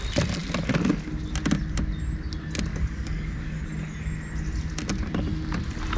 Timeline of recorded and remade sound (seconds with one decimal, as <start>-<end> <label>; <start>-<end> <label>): 0.0-2.7 recorded; 2.7-3.6 remade; 3.6-6.0 recorded